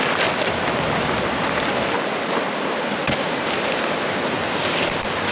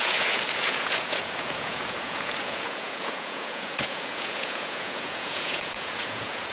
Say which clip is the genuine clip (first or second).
first